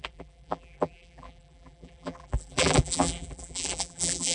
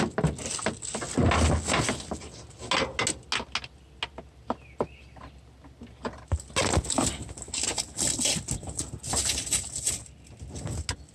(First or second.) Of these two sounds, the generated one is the first